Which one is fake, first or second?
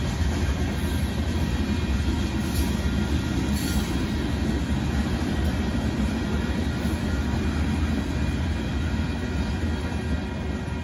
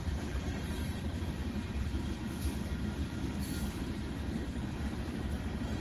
second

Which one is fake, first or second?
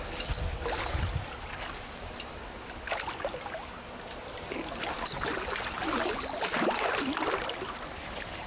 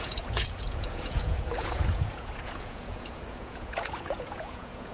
second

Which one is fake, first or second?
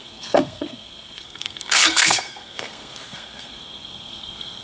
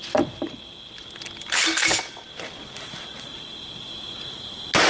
first